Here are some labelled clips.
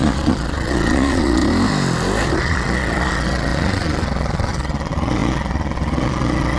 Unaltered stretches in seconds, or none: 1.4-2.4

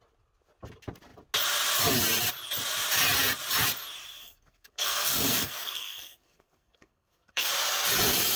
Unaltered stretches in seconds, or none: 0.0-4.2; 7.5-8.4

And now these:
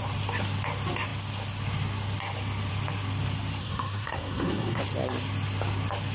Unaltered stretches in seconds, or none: 0.0-3.6; 4.8-6.1

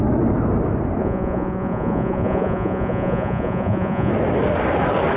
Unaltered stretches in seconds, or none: 0.0-1.0; 4.1-5.2